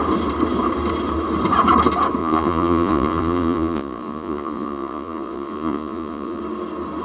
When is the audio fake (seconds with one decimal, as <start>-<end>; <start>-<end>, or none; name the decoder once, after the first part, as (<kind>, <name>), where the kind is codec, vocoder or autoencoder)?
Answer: 2.2-6.4 (vocoder, Vocos)